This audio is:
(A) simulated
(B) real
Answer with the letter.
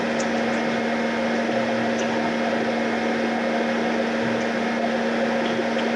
B